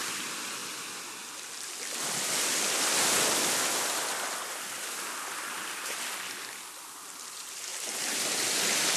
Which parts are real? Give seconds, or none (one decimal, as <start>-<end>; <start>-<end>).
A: 0.0-9.0